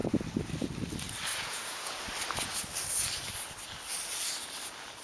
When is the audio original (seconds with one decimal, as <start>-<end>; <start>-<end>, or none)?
0.0-1.3; 2.0-5.0